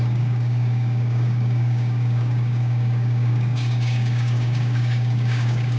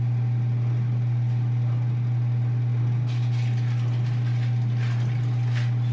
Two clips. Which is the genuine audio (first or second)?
second